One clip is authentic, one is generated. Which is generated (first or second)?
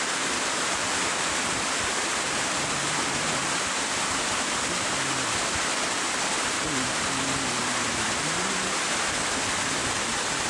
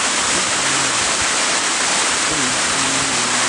first